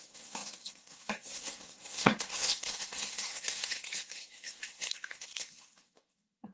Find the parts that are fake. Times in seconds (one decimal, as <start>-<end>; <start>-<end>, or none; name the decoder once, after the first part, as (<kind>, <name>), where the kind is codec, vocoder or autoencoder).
0.0-6.5 (codec, SNAC)